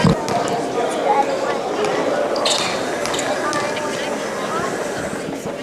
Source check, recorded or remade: recorded